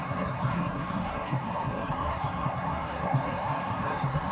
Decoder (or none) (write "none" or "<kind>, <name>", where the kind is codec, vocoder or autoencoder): codec, SNAC